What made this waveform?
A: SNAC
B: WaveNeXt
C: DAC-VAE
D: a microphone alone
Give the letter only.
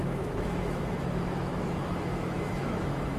C